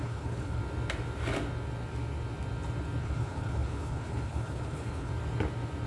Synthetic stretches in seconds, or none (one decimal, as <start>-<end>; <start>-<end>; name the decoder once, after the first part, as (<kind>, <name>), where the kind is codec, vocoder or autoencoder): 0.0-0.6 (codec, HILCodec); 3.0-5.1